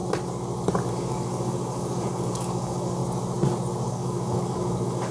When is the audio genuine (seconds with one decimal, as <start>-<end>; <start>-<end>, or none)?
0.0-0.9; 3.0-3.9

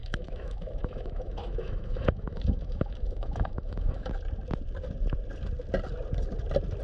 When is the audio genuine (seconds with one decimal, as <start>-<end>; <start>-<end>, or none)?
4.1-6.8

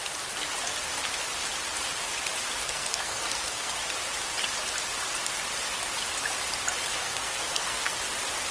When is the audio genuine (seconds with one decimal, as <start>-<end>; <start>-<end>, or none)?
0.0-2.6; 3.8-7.0; 8.0-8.5

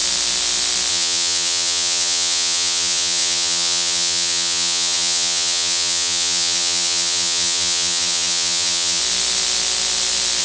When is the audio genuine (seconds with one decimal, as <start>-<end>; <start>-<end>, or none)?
0.0-0.9; 9.0-10.4

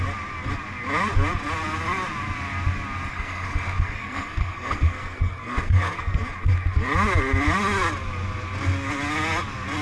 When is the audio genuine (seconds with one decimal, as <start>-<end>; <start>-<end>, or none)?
0.0-3.1; 6.2-9.8

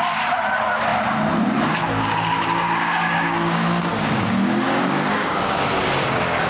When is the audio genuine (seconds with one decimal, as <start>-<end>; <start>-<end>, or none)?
0.0-1.8; 5.7-6.5